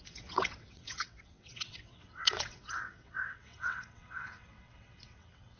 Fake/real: fake